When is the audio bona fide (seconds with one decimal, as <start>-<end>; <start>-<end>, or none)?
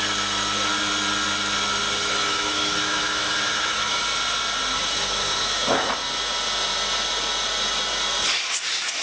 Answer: 0.0-2.0; 4.0-4.7; 5.9-9.0